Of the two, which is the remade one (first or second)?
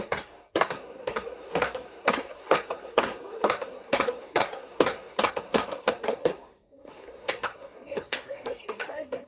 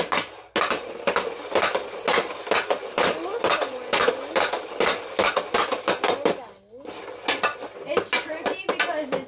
first